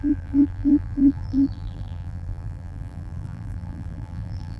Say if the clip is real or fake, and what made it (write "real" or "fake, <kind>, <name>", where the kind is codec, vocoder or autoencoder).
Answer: fake, vocoder, BigVGAN v2